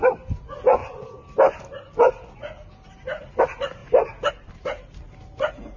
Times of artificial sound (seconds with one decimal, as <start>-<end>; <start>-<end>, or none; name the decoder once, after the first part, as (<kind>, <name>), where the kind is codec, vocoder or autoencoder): none